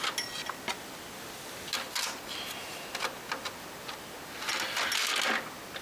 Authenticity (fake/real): real